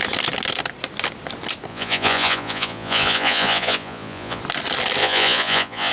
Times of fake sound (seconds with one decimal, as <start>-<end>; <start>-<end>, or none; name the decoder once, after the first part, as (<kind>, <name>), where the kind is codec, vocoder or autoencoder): 1.7-4.4 (vocoder, Vocos); 5.0-5.9